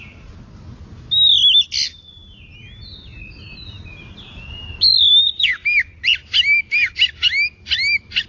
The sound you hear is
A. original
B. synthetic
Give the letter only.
A